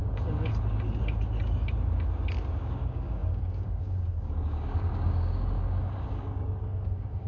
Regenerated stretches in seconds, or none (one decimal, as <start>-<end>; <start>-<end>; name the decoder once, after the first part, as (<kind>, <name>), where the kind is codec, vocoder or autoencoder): 0.0-0.5 (codec, DAC); 2.5-7.3